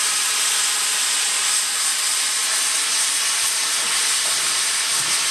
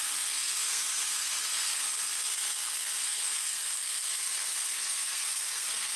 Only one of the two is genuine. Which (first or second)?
first